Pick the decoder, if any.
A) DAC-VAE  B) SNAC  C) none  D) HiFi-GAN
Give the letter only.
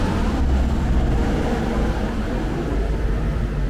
C